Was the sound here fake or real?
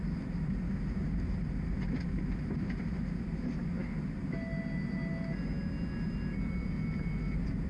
real